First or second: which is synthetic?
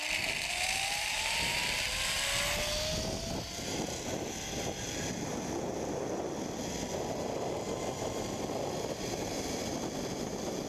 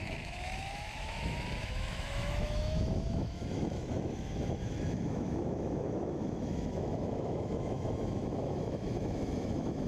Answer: second